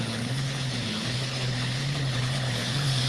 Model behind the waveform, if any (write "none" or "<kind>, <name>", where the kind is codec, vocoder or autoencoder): codec, HILCodec